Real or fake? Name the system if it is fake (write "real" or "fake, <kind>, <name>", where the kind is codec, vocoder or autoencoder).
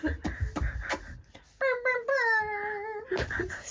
real